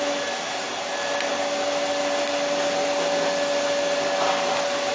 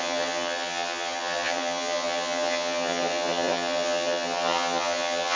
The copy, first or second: second